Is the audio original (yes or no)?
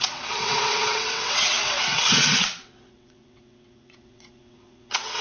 no